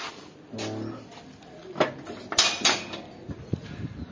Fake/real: real